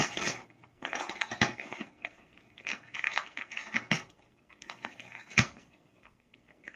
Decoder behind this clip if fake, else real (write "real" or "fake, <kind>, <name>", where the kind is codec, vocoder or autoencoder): fake, codec, SNAC